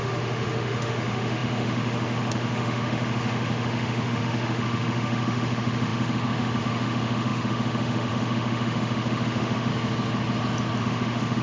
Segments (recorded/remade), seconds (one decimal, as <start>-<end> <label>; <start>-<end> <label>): 0.0-9.7 remade; 9.7-10.8 recorded; 10.8-11.4 remade